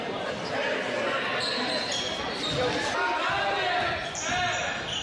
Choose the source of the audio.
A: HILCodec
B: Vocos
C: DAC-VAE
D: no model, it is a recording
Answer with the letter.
D